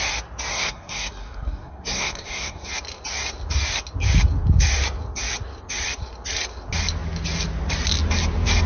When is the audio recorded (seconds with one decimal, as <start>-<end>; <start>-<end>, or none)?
0.0-0.5; 2.7-8.7